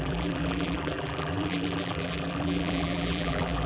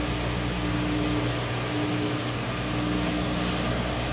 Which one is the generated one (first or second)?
first